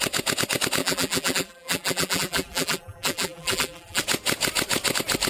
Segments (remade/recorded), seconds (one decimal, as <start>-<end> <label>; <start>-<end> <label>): 0.0-0.8 recorded; 0.8-4.0 remade; 4.0-5.3 recorded